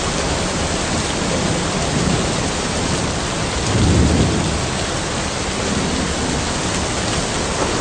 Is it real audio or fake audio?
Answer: real